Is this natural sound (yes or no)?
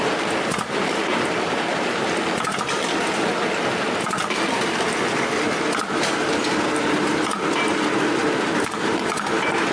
yes